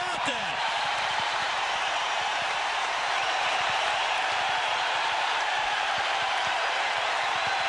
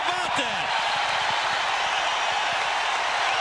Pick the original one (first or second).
second